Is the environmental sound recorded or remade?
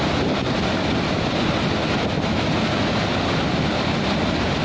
recorded